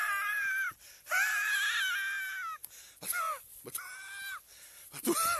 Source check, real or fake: real